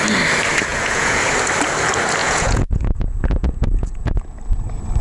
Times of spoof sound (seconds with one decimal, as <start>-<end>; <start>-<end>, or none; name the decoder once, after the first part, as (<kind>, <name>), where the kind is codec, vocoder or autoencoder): 0.7-1.2 (vocoder, Vocos); 2.2-4.4